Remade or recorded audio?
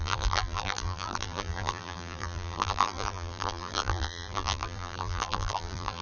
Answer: remade